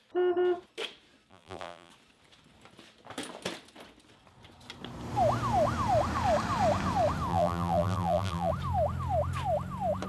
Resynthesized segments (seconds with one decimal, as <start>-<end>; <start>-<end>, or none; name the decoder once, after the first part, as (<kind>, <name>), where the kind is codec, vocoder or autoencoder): 1.3-1.9 (vocoder, BigVGAN v2); 7.3-8.5